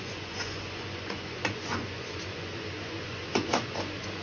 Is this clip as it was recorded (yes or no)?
no